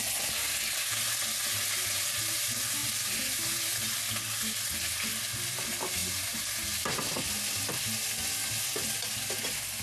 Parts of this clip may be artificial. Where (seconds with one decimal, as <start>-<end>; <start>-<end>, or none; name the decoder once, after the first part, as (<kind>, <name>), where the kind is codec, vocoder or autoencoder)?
none